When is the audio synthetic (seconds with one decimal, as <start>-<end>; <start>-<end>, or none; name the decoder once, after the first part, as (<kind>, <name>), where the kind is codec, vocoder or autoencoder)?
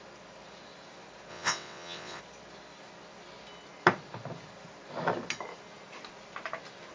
1.3-2.2 (vocoder, WaveNeXt)